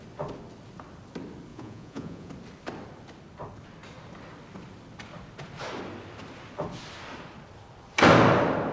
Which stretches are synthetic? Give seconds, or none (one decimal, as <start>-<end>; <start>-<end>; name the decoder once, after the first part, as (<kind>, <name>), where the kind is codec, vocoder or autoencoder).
1.5-2.3 (vocoder, Vocos)